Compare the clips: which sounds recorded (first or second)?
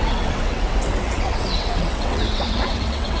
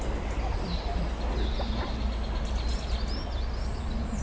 second